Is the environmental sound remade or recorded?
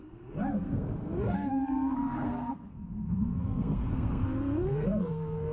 remade